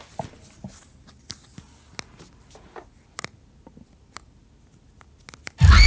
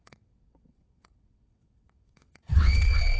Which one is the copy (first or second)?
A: second